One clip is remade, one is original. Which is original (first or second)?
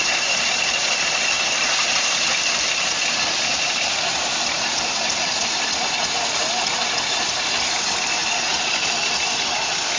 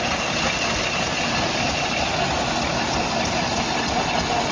second